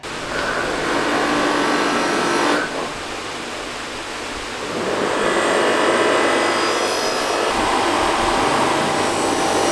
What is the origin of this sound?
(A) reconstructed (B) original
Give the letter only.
B